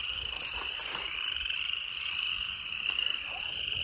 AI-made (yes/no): yes